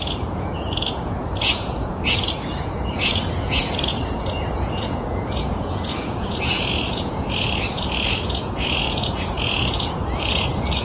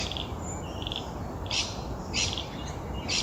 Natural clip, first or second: second